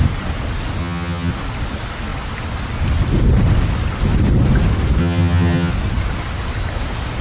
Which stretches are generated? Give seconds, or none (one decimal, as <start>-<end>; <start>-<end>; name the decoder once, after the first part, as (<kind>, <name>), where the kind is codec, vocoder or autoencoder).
0.8-1.3 (vocoder, HiFi-GAN); 5.0-5.7